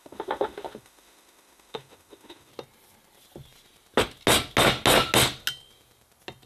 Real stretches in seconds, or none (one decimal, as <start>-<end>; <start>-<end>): 2.5-6.5